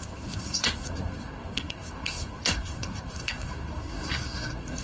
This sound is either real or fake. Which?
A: fake